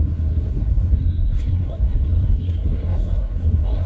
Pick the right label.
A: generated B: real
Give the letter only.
A